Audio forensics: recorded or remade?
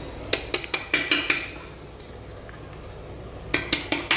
recorded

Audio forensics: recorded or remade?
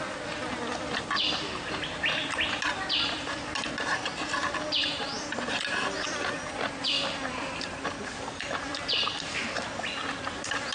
recorded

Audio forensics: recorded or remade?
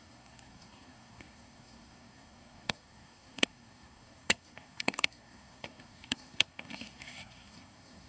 remade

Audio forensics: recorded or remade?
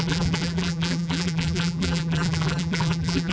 remade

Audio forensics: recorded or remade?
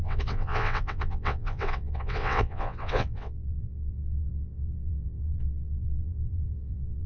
remade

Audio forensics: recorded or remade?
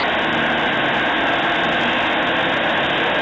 recorded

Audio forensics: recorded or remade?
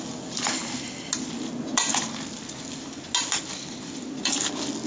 recorded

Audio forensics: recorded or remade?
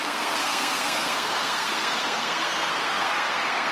remade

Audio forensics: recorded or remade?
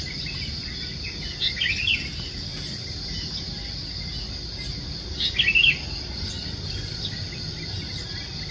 recorded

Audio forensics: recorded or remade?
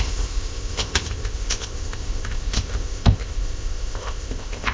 remade